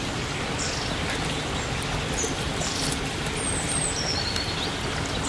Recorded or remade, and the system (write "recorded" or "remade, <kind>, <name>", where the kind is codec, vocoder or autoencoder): recorded